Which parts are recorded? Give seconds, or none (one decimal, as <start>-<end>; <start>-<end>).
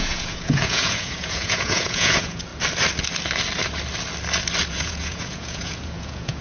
2.5-4.7